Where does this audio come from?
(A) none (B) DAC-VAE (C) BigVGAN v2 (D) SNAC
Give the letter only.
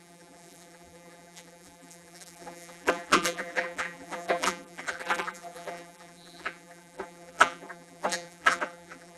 C